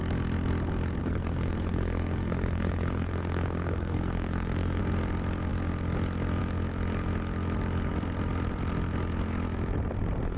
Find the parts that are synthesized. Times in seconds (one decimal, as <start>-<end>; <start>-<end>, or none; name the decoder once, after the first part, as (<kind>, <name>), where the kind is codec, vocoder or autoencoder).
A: 1.0-4.8 (codec, SNAC)